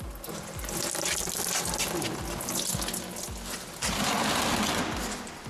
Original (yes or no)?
yes